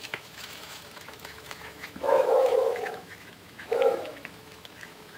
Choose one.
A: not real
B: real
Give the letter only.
A